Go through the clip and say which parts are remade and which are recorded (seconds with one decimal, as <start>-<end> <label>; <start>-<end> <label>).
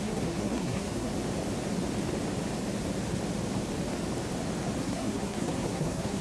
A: 0.0-1.1 remade; 1.1-4.8 recorded; 4.8-6.2 remade